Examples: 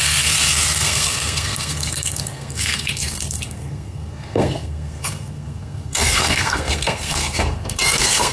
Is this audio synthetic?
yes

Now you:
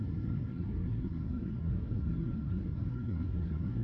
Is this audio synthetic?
yes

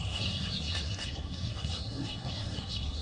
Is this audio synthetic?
yes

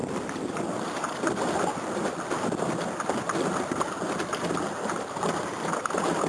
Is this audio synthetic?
no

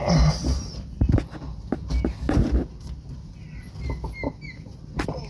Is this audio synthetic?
no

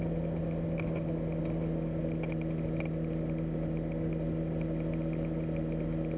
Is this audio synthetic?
no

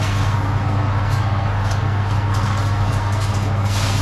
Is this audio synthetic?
yes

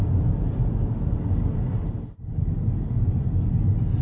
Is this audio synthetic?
no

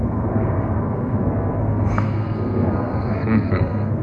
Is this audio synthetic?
yes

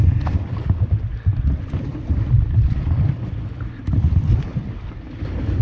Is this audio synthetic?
no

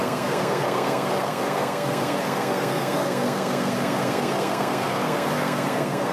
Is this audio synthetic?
yes